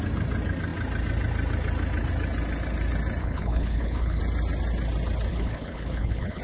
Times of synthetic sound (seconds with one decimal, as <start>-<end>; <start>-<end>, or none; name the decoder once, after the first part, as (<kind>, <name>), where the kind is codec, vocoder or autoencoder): 3.2-4.2 (codec, HILCodec); 5.3-6.4